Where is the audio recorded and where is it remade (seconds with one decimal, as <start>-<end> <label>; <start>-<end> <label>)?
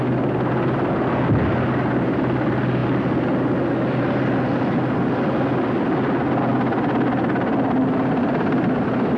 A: 0.0-9.2 recorded